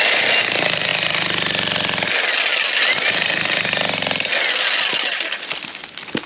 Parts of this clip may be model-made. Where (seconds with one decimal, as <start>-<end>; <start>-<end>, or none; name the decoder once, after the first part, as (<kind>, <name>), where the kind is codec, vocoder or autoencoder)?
none